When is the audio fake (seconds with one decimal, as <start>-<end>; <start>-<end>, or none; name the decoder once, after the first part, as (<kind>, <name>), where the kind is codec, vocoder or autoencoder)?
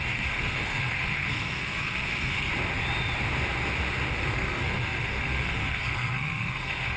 0.0-2.5 (codec, SNAC); 4.1-7.0